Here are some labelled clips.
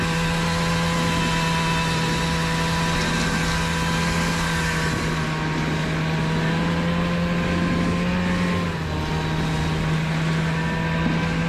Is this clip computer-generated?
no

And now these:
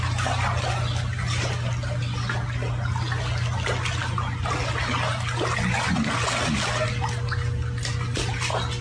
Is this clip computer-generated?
no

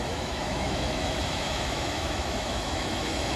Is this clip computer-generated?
yes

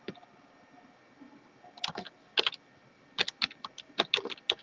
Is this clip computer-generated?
no